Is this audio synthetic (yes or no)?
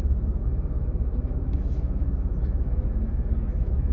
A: yes